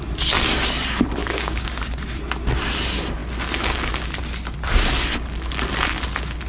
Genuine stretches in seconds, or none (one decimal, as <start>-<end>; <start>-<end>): 0.0-1.2; 1.7-6.5